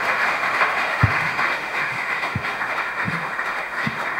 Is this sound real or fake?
fake